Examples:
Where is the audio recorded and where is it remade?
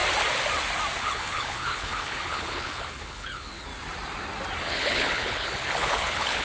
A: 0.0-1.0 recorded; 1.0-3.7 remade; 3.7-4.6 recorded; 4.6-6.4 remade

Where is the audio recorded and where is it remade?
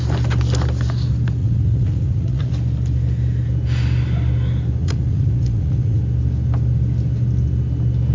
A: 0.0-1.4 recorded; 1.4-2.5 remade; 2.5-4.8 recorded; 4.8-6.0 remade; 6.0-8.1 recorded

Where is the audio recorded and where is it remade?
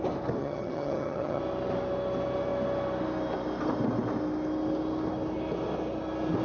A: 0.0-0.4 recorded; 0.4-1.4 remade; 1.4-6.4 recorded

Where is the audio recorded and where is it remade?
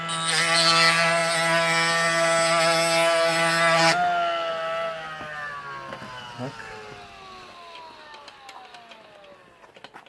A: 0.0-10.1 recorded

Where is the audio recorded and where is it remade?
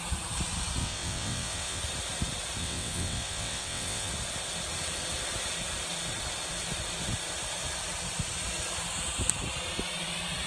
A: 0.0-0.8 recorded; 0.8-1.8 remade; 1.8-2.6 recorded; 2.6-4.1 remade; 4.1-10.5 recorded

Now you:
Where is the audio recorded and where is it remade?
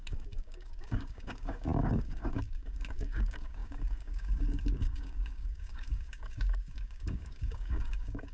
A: 0.0-8.3 remade